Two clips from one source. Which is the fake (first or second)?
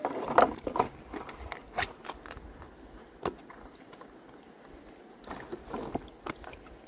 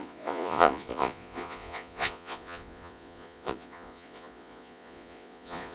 second